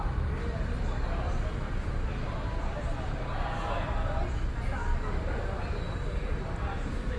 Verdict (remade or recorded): recorded